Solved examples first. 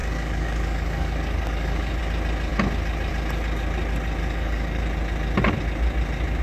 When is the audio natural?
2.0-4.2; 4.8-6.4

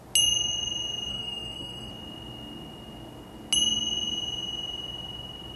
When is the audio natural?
0.0-1.1; 1.9-5.6

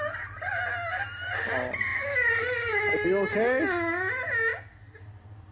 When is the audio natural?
0.0-5.5